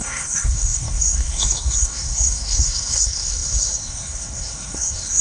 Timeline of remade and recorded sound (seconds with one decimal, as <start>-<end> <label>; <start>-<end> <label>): 0.0-5.2 remade